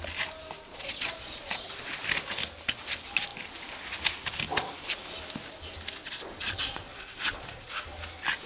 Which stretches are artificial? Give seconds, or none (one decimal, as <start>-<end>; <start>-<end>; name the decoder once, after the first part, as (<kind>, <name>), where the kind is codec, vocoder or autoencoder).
0.7-2.0 (vocoder, Vocos); 6.0-7.7